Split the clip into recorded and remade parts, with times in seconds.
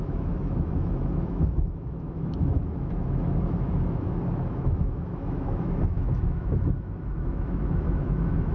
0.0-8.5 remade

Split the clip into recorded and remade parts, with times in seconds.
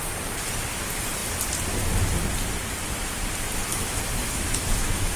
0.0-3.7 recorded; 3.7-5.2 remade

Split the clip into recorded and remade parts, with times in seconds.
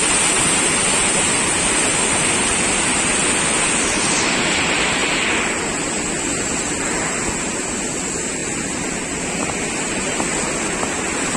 0.0-11.4 recorded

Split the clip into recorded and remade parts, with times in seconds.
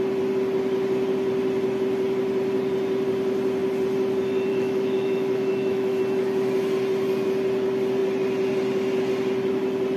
0.0-4.5 recorded; 4.5-6.0 remade; 6.0-10.0 recorded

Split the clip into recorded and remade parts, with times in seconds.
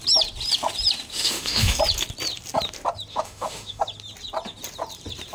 0.0-1.1 recorded; 1.1-1.8 remade; 1.8-3.1 recorded; 3.1-3.8 remade; 3.8-5.3 recorded